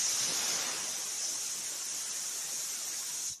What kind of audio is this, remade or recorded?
recorded